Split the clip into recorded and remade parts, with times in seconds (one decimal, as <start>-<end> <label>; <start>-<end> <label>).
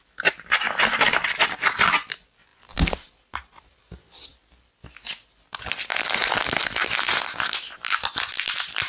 0.0-2.5 recorded; 2.5-3.9 remade; 3.9-8.9 recorded